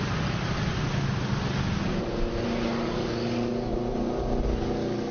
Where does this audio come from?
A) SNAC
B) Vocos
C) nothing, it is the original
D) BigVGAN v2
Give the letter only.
C